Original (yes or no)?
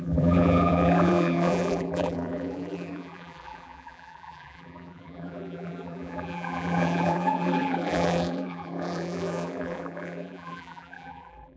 no